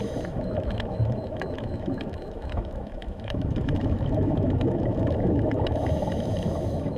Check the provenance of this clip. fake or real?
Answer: fake